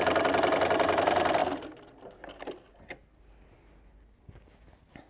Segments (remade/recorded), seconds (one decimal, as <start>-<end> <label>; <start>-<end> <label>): 0.0-5.1 recorded